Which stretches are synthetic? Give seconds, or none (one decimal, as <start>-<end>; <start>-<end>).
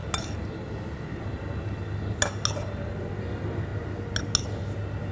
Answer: none